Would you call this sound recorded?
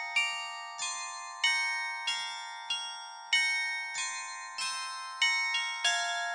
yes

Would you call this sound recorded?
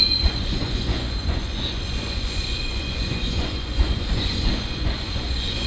no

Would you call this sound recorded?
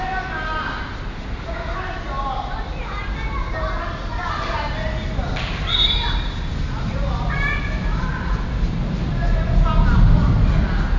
yes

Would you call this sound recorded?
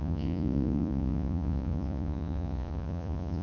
no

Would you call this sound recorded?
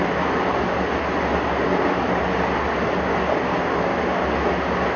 yes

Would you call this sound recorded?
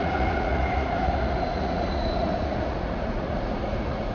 no